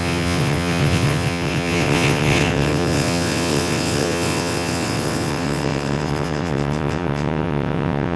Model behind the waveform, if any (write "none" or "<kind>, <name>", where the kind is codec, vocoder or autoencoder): vocoder, WaveNeXt